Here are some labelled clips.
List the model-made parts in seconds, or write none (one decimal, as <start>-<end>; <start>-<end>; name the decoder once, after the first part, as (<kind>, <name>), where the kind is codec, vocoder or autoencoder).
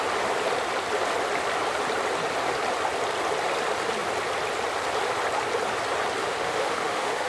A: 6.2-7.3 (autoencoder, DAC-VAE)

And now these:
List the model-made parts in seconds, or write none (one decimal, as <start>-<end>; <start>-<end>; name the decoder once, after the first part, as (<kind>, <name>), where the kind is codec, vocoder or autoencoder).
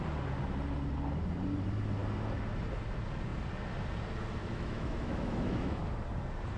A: 4.4-5.8 (autoencoder, DAC-VAE)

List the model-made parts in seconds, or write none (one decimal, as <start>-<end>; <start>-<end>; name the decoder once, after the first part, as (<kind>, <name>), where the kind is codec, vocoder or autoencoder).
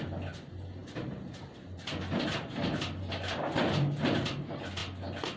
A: none